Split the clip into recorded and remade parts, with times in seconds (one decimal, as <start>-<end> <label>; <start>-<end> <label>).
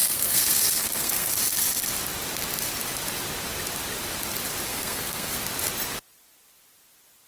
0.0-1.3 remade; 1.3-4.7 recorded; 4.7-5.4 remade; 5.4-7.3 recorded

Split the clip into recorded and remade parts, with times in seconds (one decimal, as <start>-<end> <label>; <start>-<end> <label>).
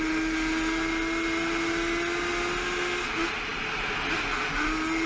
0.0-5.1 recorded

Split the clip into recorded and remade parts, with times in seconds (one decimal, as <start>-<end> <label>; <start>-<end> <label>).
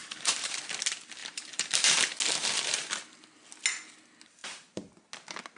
0.0-0.6 remade; 0.6-1.2 recorded; 1.2-2.1 remade; 2.1-4.4 recorded; 4.4-4.9 remade; 4.9-5.6 recorded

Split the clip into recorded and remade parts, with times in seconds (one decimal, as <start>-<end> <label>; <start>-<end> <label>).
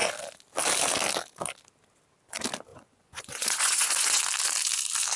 0.0-2.7 recorded; 2.7-4.2 remade; 4.2-5.2 recorded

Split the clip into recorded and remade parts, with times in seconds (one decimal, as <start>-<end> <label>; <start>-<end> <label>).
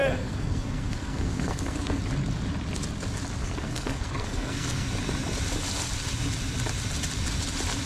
0.0-2.0 remade; 2.0-3.4 recorded; 3.4-4.9 remade; 4.9-7.9 recorded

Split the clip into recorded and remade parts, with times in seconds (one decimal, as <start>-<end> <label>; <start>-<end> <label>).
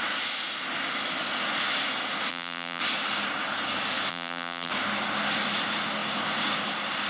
0.0-2.3 recorded; 2.3-2.8 remade; 2.8-4.1 recorded; 4.1-4.7 remade; 4.7-7.1 recorded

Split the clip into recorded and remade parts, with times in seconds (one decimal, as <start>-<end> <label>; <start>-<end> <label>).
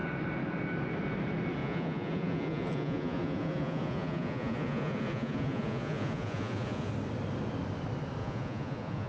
0.0-1.6 recorded; 1.6-6.9 remade; 6.9-8.2 recorded; 8.2-9.1 remade